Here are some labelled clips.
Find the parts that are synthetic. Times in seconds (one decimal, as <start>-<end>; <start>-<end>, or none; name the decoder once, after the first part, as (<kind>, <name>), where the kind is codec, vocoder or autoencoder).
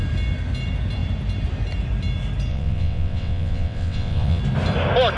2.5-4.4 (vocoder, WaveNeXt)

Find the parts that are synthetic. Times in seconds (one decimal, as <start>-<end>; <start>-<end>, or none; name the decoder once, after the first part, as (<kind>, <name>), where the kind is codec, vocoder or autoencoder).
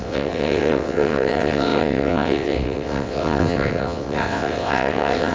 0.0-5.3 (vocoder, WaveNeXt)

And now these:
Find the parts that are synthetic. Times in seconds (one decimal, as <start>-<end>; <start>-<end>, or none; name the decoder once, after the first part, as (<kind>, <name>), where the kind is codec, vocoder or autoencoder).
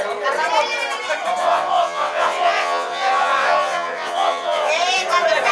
1.4-4.7 (vocoder, WaveNeXt)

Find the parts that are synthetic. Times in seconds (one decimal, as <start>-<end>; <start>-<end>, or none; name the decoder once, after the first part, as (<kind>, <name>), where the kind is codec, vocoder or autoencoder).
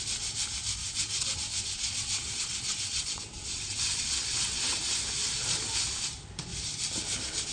0.8-4.8 (vocoder, WaveNeXt)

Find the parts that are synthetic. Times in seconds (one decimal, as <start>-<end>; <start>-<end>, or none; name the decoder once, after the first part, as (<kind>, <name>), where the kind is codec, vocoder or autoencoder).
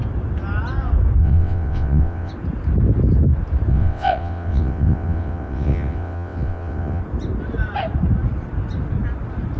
1.2-2.3 (vocoder, WaveNeXt); 3.7-7.0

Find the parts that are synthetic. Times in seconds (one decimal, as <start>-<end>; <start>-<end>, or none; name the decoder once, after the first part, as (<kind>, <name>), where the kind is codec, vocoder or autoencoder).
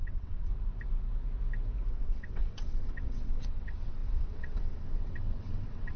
0.0-0.5 (vocoder, WaveNeXt); 1.9-6.0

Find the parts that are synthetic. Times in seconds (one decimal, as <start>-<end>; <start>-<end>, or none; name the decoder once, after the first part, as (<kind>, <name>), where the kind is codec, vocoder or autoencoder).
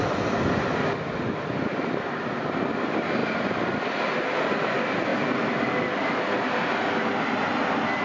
none